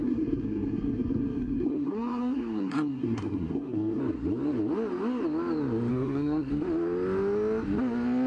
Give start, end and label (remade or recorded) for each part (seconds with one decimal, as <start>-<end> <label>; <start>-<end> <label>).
0.0-4.0 remade; 4.0-5.9 recorded; 5.9-6.5 remade; 6.5-8.3 recorded